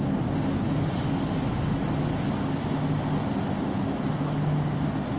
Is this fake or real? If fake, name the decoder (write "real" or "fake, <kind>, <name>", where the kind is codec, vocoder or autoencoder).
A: real